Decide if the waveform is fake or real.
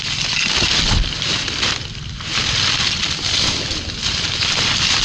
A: real